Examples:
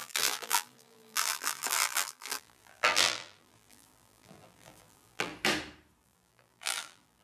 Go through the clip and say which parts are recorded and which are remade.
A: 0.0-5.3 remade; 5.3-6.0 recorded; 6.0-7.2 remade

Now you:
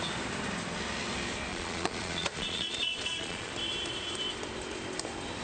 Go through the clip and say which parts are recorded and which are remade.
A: 0.0-1.5 recorded; 1.5-3.5 remade; 3.5-5.4 recorded

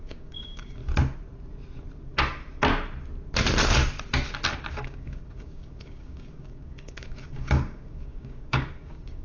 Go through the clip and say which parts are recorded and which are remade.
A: 0.0-0.8 remade; 0.8-4.7 recorded; 4.7-9.2 remade